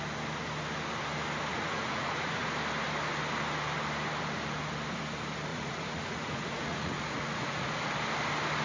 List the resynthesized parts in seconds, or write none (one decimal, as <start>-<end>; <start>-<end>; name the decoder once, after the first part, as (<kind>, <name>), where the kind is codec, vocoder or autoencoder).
1.5-2.5 (vocoder, Vocos); 5.5-7.9